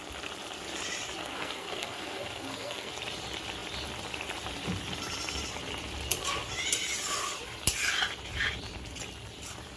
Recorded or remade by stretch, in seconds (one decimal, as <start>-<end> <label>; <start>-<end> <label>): 0.0-1.2 recorded; 1.2-2.9 remade; 2.9-9.8 recorded